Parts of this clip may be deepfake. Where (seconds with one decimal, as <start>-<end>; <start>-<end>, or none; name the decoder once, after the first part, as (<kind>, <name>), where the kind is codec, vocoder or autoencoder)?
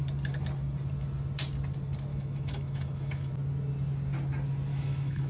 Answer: 2.1-3.3 (autoencoder, DAC-VAE); 4.7-5.3